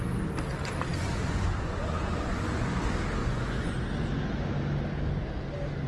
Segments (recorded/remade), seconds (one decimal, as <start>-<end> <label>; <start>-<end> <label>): 0.0-0.9 recorded; 0.9-2.8 remade; 2.8-3.2 recorded; 3.2-3.8 remade; 3.8-5.9 recorded